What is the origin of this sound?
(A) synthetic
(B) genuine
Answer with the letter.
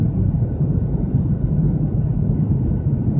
A